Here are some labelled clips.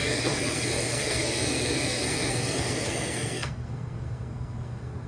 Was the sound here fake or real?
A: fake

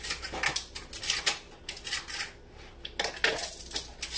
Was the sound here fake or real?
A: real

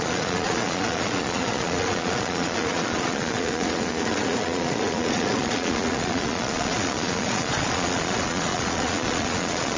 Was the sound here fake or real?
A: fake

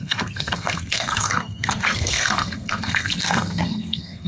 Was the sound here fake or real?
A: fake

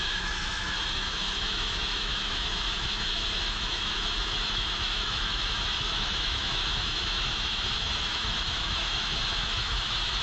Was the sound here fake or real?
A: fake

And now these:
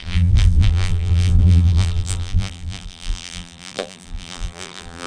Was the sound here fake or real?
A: fake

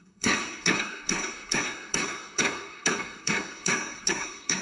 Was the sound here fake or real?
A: fake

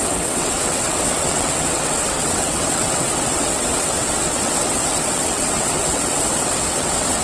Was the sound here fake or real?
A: fake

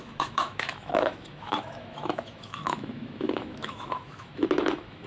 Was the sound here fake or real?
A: fake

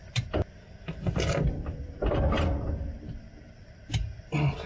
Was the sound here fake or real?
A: fake